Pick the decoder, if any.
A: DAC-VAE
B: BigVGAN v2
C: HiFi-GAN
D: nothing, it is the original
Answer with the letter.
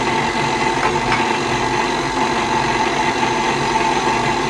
D